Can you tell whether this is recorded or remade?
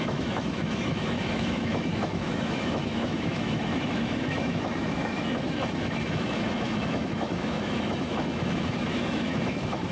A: remade